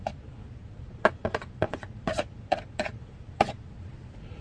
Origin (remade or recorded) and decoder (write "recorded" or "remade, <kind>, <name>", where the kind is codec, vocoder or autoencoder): remade, vocoder, Vocos